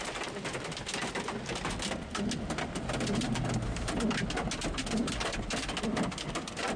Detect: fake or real real